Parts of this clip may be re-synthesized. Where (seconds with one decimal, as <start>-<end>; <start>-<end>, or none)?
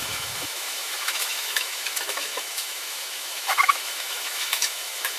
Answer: 0.0-5.2